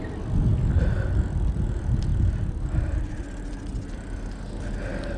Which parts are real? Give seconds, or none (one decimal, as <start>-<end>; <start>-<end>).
0.0-5.2